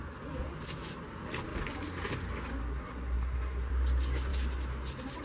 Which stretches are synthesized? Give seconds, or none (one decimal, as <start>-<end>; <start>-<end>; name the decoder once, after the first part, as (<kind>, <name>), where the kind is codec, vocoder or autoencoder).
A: 2.6-3.7 (codec, SNAC)